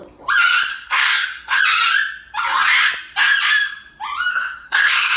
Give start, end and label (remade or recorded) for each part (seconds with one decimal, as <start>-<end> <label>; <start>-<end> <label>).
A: 0.0-0.7 recorded; 0.7-1.6 remade; 1.6-4.3 recorded; 4.3-5.2 remade